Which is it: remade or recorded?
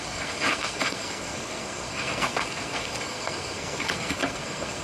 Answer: remade